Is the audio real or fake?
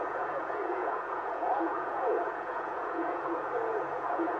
fake